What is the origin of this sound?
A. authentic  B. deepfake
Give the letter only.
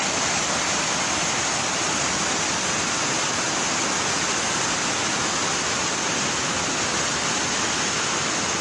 A